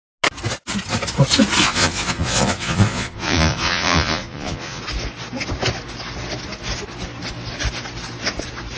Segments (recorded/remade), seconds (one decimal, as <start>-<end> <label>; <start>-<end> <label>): 0.0-1.6 recorded; 1.6-4.8 remade; 4.8-8.8 recorded